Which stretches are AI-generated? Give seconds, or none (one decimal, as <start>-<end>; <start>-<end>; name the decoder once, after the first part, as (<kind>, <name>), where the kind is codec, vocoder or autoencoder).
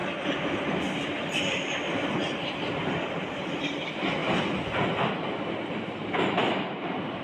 none